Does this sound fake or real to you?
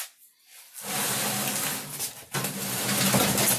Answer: real